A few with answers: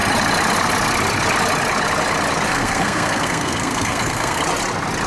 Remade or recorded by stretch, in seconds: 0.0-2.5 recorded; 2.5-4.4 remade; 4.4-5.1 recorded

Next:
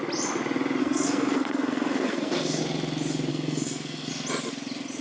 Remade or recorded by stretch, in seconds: 0.0-0.8 recorded; 0.8-2.6 remade; 2.6-3.3 recorded; 3.3-4.1 remade; 4.1-5.0 recorded